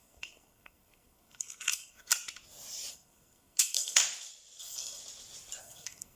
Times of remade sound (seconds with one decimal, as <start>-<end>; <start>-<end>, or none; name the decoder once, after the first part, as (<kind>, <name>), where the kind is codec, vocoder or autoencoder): 0.0-2.1 (codec, SNAC); 2.9-4.0; 4.6-5.0; 5.6-6.2